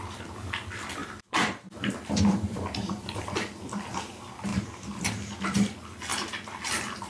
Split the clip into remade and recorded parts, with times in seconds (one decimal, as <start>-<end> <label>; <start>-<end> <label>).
0.0-1.0 recorded; 1.0-2.9 remade; 2.9-4.5 recorded; 4.5-5.0 remade; 5.0-6.1 recorded; 6.1-7.1 remade